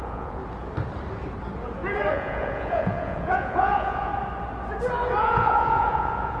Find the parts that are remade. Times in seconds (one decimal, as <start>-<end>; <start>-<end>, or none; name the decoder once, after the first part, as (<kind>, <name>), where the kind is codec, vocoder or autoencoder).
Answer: 0.0-0.4 (vocoder, Vocos); 2.1-4.1; 5.2-6.4